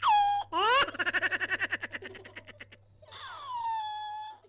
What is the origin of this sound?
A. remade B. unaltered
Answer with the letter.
B